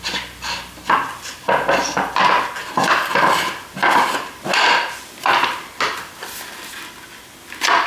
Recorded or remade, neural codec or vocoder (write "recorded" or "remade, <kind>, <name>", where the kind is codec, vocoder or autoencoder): recorded